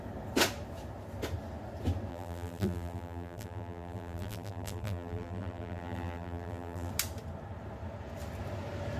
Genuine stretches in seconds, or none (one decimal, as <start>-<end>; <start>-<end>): 0.0-2.1; 6.9-9.0